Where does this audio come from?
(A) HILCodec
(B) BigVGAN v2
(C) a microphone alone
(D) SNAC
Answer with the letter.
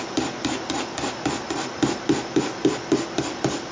C